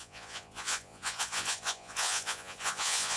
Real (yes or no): no